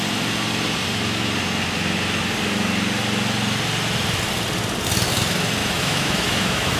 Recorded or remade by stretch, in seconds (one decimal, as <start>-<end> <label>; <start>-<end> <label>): 0.0-5.6 recorded; 5.6-6.8 remade